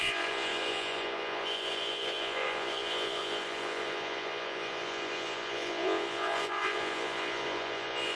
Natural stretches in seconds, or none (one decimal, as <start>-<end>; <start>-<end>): none